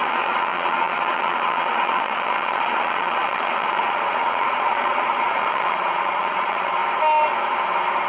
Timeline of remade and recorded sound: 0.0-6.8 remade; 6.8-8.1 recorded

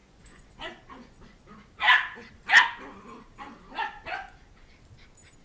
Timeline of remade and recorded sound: 0.0-1.4 remade; 1.4-4.1 recorded; 4.1-4.7 remade; 4.7-5.4 recorded

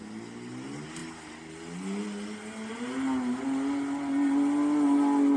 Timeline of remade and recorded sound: 0.0-5.4 recorded